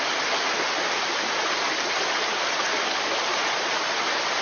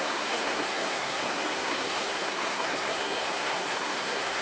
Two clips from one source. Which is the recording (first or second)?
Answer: first